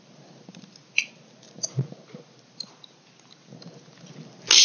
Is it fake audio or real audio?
real